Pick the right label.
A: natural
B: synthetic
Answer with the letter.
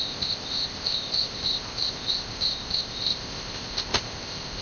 B